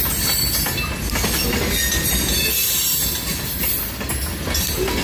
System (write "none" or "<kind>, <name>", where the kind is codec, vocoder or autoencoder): none